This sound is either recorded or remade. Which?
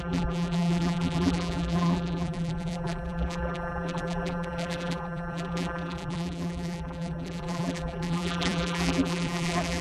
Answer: remade